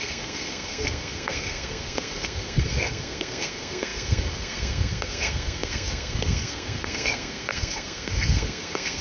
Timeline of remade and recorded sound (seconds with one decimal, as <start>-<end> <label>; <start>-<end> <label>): 0.0-9.0 remade